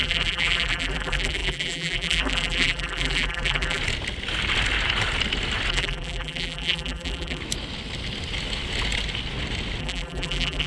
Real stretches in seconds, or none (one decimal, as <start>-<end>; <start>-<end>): 3.8-5.7; 7.4-9.8